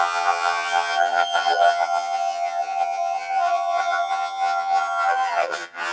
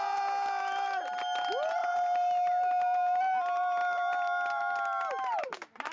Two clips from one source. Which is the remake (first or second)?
first